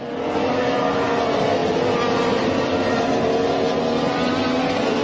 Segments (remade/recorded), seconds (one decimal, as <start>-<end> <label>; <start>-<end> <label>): 0.0-5.0 recorded

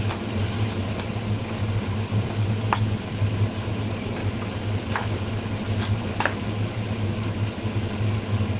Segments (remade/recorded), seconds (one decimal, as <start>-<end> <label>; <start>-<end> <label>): 0.0-1.6 recorded; 1.6-2.5 remade; 2.5-8.6 recorded

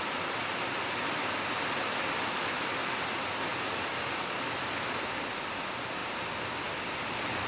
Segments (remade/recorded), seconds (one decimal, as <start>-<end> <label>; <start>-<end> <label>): 0.0-7.5 recorded